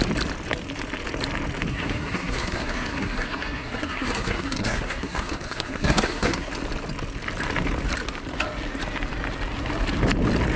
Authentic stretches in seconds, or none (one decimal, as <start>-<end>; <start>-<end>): 0.0-1.7; 6.5-10.6